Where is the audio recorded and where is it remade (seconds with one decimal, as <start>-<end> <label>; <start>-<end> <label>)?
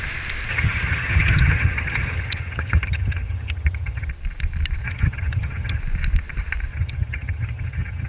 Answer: 0.0-0.5 recorded; 0.5-4.1 remade; 4.1-4.8 recorded; 4.8-5.8 remade; 5.8-6.7 recorded; 6.7-8.1 remade